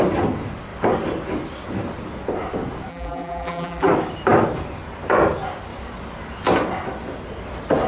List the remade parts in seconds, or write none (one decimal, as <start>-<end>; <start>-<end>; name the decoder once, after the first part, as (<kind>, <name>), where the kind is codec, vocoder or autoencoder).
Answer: 2.9-3.9 (vocoder, BigVGAN v2)